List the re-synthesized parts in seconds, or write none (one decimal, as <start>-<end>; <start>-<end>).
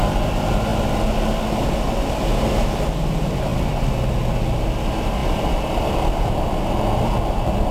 none